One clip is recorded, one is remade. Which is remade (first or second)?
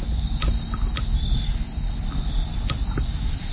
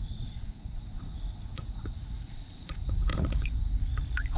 second